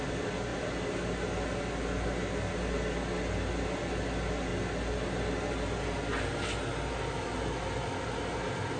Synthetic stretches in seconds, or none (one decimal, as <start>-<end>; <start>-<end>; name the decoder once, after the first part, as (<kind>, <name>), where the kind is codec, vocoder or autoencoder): none